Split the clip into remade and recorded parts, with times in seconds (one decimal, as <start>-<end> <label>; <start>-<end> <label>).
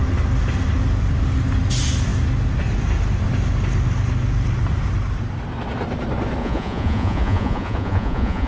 0.0-6.4 recorded; 6.4-8.5 remade